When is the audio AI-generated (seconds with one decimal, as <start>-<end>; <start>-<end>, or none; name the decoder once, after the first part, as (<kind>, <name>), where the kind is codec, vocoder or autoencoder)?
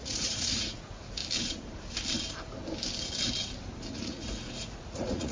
0.0-1.2 (vocoder, Vocos); 3.8-5.3